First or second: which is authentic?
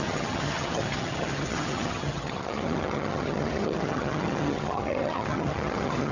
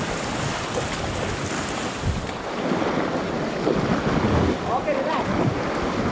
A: second